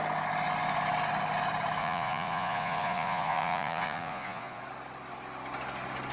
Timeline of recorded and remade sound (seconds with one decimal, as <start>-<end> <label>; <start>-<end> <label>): 0.0-1.8 recorded; 1.8-4.6 remade; 4.6-6.1 recorded